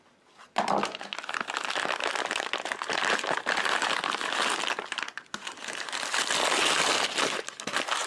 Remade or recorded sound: recorded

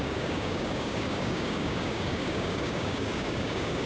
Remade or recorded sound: remade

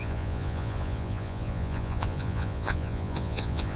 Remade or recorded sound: remade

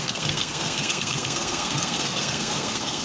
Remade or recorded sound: remade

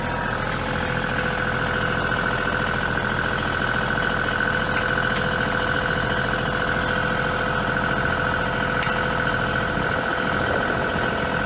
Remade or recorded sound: recorded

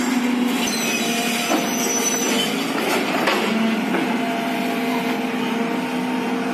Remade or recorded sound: recorded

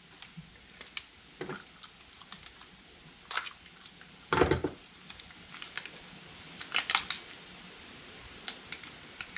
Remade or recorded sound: recorded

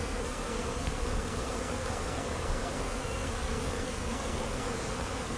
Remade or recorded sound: remade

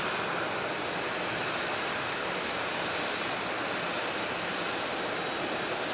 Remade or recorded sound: recorded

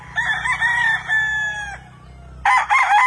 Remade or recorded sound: recorded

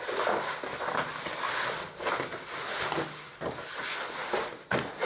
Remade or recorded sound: recorded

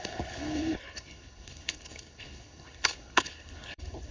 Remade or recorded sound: remade